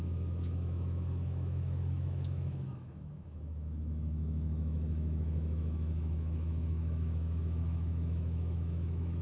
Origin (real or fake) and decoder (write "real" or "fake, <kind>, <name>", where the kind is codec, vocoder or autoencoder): fake, autoencoder, DAC-VAE